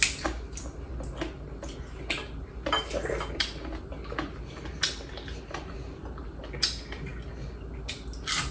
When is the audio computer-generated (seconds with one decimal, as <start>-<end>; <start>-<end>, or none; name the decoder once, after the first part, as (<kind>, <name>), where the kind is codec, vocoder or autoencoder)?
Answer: none